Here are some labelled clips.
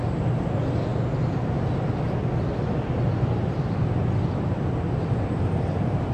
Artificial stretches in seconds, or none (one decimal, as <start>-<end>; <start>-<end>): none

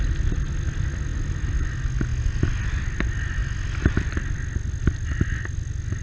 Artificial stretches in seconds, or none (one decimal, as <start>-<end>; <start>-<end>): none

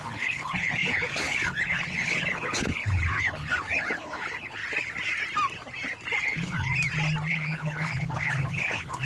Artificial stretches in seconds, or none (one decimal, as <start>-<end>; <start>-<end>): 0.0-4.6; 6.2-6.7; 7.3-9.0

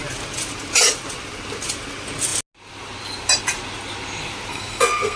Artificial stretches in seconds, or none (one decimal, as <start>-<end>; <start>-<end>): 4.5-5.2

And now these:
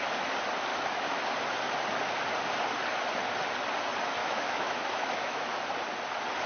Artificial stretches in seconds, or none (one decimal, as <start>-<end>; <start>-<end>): 0.7-1.2; 4.2-5.6

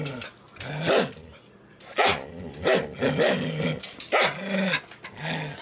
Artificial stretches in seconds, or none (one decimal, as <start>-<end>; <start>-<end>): none

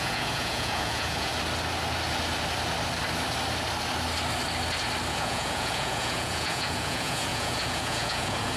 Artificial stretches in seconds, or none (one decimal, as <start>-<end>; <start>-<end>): 0.0-1.3; 5.1-8.6